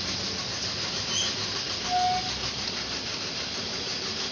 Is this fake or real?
real